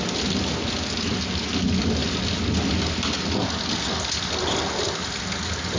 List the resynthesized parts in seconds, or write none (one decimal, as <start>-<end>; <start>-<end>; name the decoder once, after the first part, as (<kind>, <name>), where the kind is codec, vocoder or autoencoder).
none